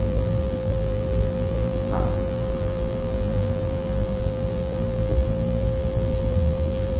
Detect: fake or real fake